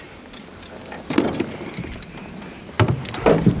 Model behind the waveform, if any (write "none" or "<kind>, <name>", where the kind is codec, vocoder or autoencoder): none